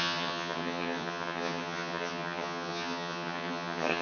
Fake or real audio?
fake